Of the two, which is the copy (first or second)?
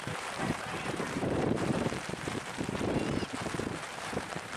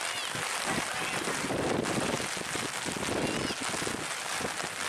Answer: first